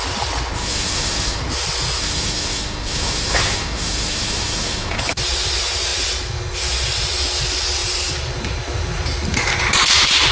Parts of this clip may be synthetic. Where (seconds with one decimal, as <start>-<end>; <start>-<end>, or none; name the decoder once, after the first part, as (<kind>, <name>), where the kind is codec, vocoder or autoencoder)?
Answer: 0.6-1.4 (autoencoder, DAC-VAE); 2.0-5.0